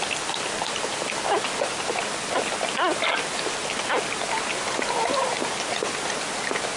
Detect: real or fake real